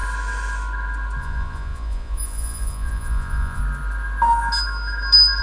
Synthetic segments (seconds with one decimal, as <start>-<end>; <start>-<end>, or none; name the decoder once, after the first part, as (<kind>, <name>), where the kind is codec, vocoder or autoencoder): 1.2-3.6 (vocoder, Vocos)